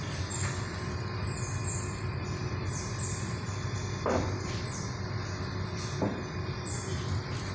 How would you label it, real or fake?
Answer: real